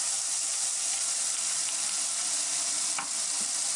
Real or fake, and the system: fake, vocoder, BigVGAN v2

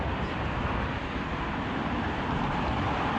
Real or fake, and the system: fake, vocoder, BigVGAN v2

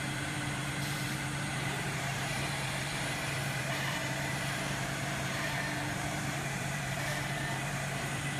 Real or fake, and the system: fake, vocoder, BigVGAN v2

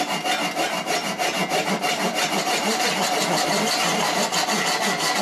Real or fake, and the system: real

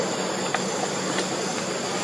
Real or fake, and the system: real